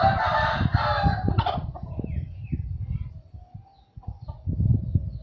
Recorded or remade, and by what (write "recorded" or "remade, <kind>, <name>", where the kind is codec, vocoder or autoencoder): recorded